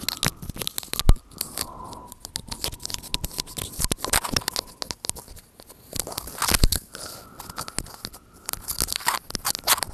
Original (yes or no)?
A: yes